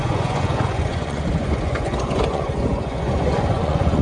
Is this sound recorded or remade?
remade